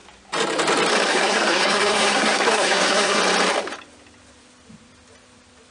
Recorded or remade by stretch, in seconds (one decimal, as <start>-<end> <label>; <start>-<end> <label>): 0.0-1.1 recorded; 1.1-3.2 remade; 3.2-5.7 recorded